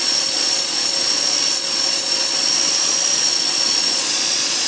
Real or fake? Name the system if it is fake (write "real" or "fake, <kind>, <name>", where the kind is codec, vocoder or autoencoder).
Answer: fake, vocoder, Vocos